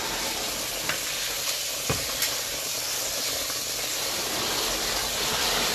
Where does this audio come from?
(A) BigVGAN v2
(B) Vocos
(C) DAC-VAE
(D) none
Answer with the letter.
D